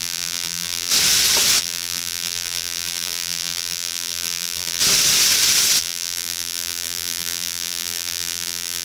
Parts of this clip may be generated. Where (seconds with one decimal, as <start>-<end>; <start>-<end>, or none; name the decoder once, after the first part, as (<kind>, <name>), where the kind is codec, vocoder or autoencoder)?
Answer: 0.0-0.9 (vocoder, BigVGAN v2); 1.6-4.8; 5.8-8.8